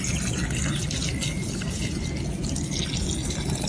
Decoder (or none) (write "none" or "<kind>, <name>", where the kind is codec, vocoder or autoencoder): none